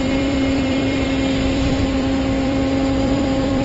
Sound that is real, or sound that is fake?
fake